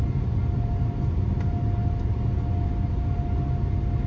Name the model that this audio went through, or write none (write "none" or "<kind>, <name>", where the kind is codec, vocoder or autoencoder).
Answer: none